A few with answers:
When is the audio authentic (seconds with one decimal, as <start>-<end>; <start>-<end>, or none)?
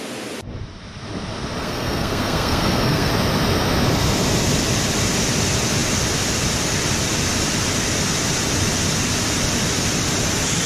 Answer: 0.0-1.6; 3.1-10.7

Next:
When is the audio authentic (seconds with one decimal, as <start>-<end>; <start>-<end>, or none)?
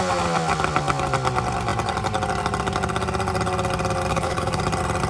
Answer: 0.0-4.1; 4.6-5.1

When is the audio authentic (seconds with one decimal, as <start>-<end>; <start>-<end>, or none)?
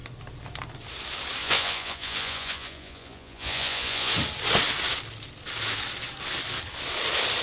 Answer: 0.0-1.4; 4.1-7.4